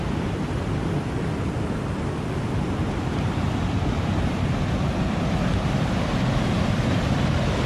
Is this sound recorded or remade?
recorded